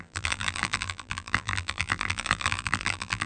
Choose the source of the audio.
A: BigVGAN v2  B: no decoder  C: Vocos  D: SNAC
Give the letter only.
A